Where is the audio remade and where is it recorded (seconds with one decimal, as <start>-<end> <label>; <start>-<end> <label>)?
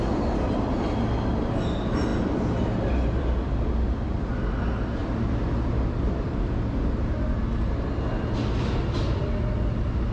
0.0-5.0 recorded; 5.0-6.8 remade; 6.8-10.1 recorded